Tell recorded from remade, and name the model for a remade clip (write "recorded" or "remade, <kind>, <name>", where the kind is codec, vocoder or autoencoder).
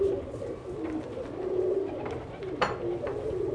recorded